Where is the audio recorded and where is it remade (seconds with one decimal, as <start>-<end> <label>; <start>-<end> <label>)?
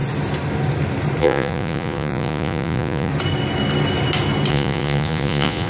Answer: 0.0-1.2 recorded; 1.2-3.1 remade; 3.1-4.5 recorded; 4.5-5.7 remade